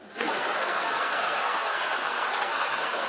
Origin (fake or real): fake